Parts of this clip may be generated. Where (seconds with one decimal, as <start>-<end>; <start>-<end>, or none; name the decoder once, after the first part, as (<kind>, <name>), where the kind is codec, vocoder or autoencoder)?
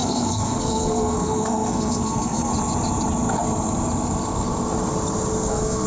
0.0-2.5 (codec, SNAC); 5.5-5.9